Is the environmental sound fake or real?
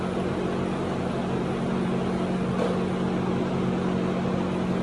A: real